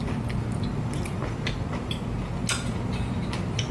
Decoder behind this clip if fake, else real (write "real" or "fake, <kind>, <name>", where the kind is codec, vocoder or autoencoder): real